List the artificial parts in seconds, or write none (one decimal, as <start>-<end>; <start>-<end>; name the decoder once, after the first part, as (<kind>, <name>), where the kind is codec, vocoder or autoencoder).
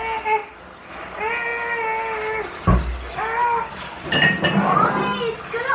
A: none